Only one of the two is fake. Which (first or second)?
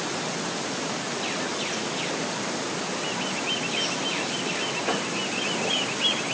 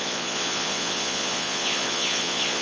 second